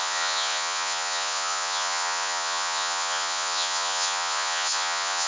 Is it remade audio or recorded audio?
remade